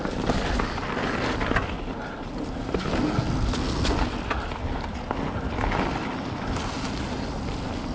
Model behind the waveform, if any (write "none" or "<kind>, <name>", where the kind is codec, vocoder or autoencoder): none